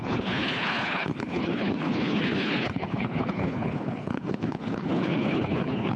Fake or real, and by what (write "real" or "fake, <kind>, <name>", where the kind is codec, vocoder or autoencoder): fake, codec, HILCodec